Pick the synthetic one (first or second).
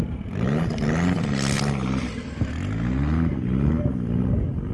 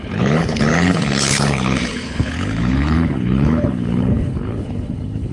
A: second